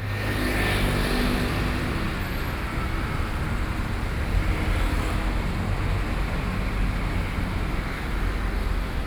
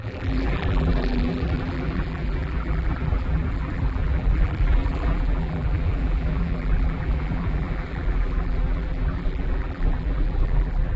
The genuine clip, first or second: first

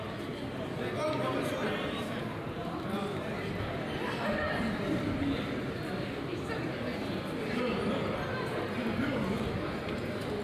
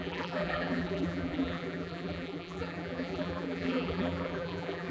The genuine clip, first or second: first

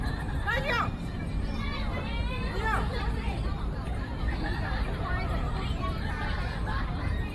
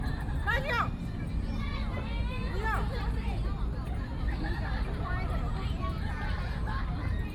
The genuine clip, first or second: second